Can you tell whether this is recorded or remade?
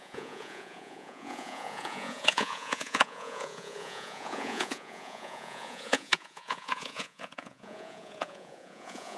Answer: remade